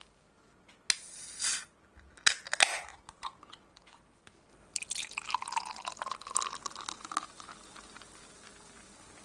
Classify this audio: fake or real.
real